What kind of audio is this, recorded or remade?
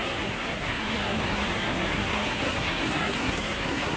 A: remade